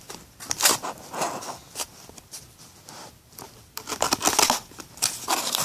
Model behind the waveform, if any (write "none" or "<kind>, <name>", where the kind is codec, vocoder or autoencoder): none